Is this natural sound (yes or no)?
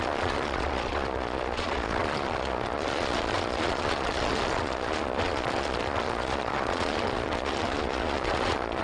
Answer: no